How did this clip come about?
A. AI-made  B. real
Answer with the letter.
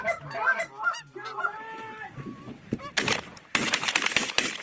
A